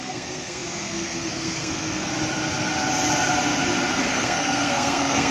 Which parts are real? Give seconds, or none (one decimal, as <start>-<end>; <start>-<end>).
2.1-3.9